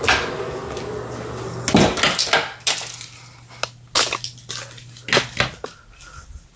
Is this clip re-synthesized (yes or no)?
no